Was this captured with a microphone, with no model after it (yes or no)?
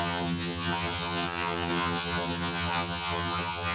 no